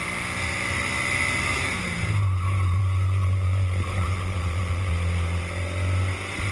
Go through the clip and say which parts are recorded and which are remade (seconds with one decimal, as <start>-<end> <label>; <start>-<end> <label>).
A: 0.0-2.8 recorded; 2.8-4.9 remade; 4.9-6.5 recorded